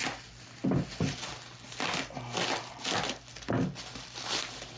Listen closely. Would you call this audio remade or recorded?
recorded